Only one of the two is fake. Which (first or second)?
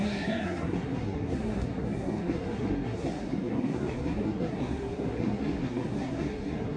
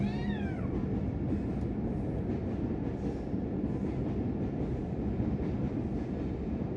first